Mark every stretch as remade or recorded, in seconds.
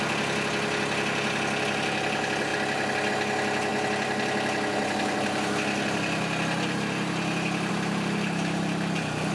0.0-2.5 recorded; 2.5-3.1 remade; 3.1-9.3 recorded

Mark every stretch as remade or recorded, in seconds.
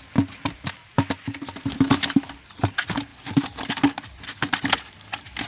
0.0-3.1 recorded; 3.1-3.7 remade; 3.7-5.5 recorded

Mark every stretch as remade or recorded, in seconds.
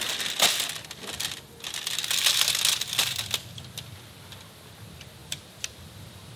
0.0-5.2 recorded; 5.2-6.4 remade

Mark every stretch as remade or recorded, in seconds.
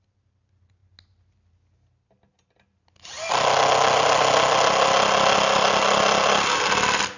0.0-7.2 recorded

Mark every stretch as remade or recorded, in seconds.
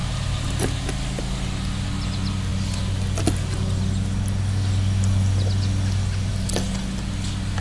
0.0-7.6 recorded